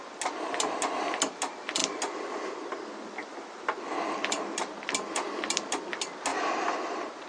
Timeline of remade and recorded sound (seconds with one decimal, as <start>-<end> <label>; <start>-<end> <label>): 0.0-7.3 recorded

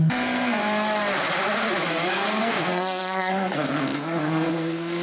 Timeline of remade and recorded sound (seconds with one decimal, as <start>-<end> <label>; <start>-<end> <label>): 0.0-0.6 remade; 0.6-2.1 recorded; 2.1-5.0 remade